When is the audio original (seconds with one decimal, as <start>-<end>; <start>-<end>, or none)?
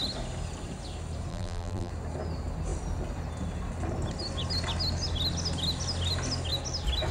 0.0-1.3; 1.9-7.1